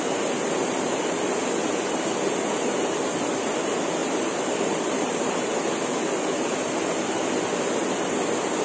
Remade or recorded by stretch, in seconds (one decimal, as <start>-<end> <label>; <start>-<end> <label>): 0.0-0.6 recorded; 0.6-1.4 remade; 1.4-4.0 recorded; 4.0-5.6 remade; 5.6-8.6 recorded